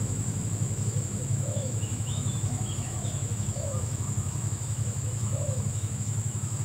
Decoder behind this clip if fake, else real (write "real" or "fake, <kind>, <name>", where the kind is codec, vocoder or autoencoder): fake, autoencoder, DAC-VAE